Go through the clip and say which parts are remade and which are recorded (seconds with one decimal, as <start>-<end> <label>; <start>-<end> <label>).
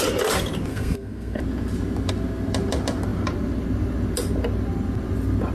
0.0-0.7 recorded; 0.7-1.4 remade; 1.4-5.5 recorded